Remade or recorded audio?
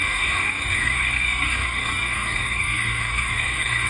remade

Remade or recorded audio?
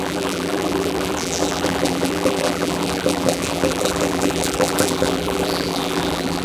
remade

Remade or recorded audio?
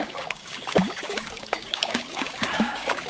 remade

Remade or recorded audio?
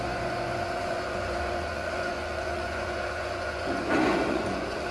remade